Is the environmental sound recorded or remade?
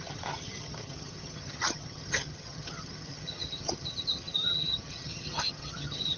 remade